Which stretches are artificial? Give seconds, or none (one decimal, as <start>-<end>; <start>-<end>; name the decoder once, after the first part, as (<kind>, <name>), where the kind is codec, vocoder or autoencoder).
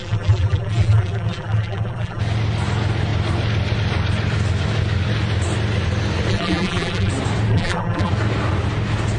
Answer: 0.0-2.2 (vocoder, BigVGAN v2); 6.3-7.1; 7.5-8.1